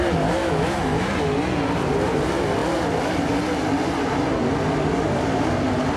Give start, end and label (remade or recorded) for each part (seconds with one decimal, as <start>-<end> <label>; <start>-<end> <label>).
0.0-0.4 recorded; 0.4-1.1 remade; 1.1-6.0 recorded